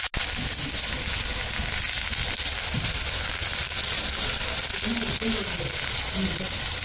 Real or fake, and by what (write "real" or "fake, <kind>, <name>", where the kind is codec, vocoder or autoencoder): real